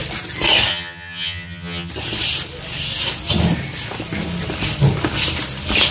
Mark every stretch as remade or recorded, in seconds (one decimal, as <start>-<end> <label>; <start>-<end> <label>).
0.0-0.7 recorded; 0.7-1.9 remade; 1.9-5.9 recorded